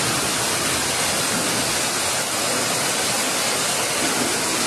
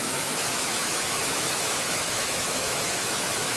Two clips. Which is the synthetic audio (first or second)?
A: second